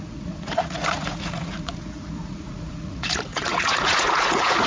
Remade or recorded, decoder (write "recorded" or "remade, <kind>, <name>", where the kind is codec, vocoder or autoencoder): remade, vocoder, Vocos